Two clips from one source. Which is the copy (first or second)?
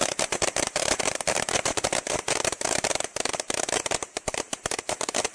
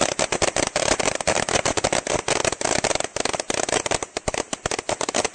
first